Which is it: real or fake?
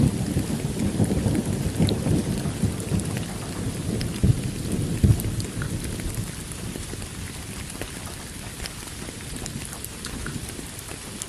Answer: fake